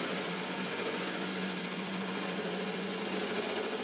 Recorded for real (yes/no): no